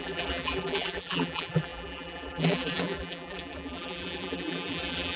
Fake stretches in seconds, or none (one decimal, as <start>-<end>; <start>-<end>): 0.0-5.2